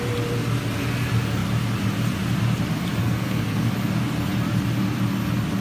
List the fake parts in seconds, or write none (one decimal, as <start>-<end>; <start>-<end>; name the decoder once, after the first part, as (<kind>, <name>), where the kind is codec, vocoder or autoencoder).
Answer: 3.0-3.7 (codec, SNAC)